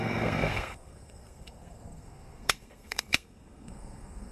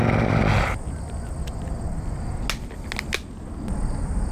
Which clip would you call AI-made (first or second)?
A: first